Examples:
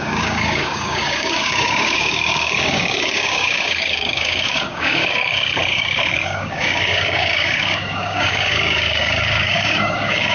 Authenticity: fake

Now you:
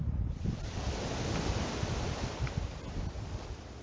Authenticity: real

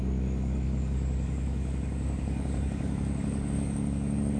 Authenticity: fake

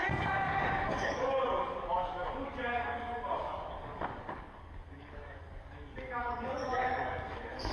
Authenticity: fake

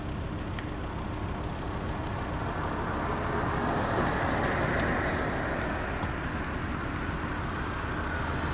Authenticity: real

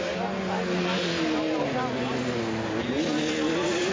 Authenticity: real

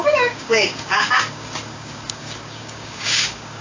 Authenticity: fake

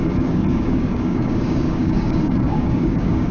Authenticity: fake